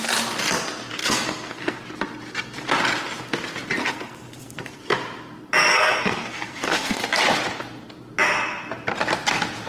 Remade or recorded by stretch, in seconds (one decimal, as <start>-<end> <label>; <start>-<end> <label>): 0.0-1.0 recorded; 1.0-1.8 remade; 1.8-3.8 recorded; 3.8-4.8 remade; 4.8-5.7 recorded; 5.7-7.0 remade; 7.0-9.7 recorded